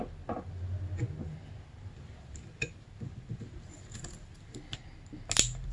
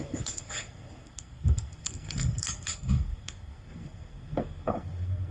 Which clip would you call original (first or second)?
first